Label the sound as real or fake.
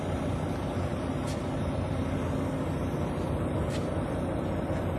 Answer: real